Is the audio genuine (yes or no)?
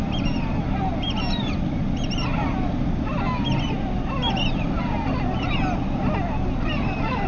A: yes